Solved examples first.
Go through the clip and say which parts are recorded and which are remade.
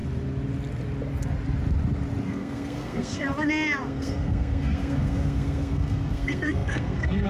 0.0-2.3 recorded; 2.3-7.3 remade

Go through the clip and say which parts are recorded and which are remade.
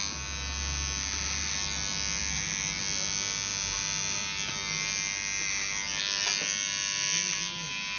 0.0-8.0 recorded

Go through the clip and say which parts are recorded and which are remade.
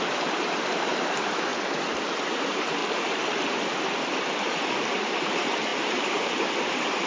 0.0-1.5 remade; 1.5-2.0 recorded; 2.0-2.8 remade; 2.8-3.8 recorded; 3.8-7.1 remade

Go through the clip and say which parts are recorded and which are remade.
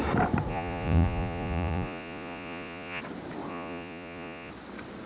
0.0-0.5 recorded; 0.5-3.0 remade; 3.0-3.5 recorded; 3.5-4.5 remade; 4.5-5.1 recorded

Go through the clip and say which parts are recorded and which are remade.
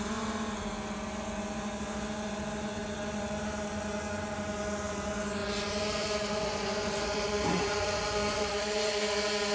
0.0-5.4 recorded; 5.4-9.0 remade; 9.0-9.5 recorded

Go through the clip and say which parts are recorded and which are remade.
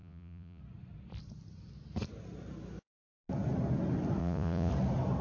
0.0-0.6 remade; 0.6-4.2 recorded; 4.2-4.7 remade; 4.7-5.2 recorded